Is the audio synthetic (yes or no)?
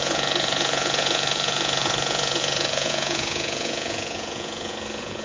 yes